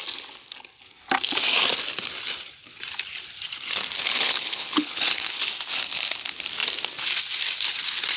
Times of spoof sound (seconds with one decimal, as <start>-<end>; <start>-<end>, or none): 4.0-5.4